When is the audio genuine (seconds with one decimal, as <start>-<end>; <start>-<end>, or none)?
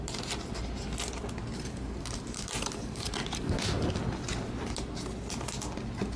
0.0-1.5; 3.9-6.2